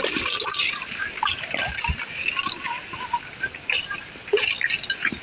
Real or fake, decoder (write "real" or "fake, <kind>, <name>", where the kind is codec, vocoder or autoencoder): real